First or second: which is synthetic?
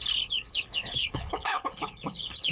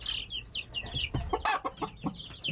first